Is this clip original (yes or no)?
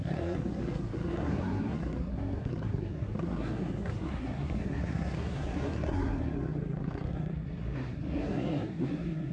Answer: no